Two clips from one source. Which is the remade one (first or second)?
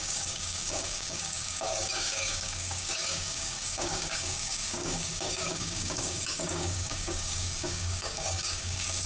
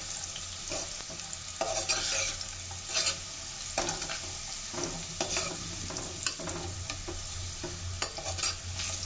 first